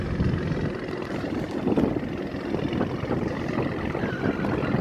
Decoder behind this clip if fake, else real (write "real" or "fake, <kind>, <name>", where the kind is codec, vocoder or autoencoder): real